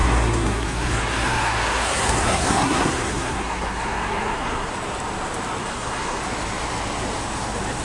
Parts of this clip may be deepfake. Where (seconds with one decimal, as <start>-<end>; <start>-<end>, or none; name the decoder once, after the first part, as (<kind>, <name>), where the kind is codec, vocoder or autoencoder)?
0.0-4.7 (codec, SNAC); 5.6-6.2